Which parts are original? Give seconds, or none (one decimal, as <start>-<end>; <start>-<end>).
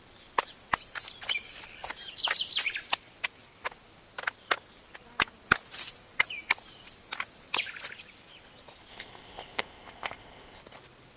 0.0-8.9; 10.6-11.2